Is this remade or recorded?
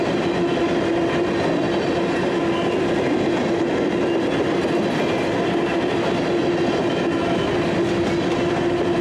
recorded